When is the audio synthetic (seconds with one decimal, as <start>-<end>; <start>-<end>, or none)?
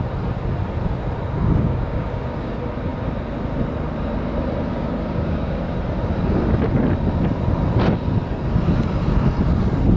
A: 1.4-2.5; 4.7-5.6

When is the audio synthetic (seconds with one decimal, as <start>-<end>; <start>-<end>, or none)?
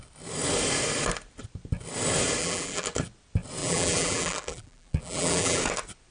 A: 2.4-2.9; 3.6-5.6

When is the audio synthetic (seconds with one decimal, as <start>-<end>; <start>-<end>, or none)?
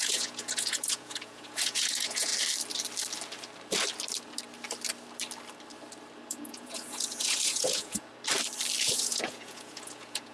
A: 0.0-2.3; 6.3-8.1; 8.8-10.3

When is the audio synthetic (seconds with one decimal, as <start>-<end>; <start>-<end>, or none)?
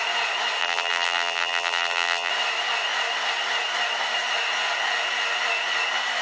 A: 0.6-2.3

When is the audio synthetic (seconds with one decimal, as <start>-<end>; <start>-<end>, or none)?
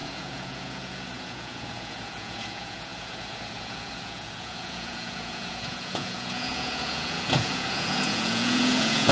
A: 0.0-9.1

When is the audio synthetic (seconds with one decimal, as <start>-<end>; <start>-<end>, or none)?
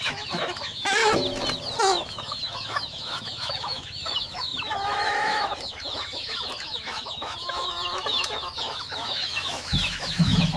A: 0.0-1.0; 1.8-10.6